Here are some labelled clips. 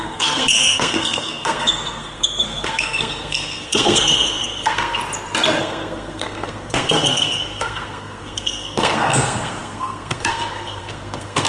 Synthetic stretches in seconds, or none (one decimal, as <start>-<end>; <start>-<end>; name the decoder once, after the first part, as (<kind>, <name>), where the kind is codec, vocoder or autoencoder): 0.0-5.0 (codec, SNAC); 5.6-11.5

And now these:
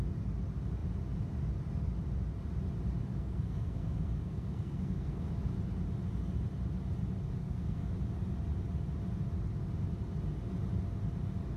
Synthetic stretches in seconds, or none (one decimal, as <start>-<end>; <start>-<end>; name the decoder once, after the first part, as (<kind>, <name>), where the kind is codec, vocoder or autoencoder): 3.1-5.3 (codec, SNAC); 7.4-7.9

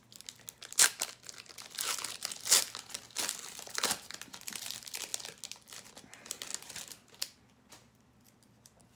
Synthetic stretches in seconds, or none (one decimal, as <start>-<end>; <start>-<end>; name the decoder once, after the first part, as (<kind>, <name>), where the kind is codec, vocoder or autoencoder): none